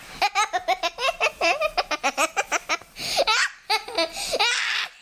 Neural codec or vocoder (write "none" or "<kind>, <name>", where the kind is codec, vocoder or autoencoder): none